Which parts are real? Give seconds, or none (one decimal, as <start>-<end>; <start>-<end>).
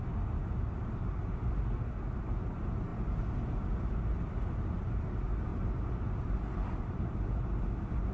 0.0-8.1